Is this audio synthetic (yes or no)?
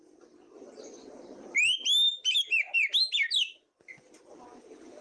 no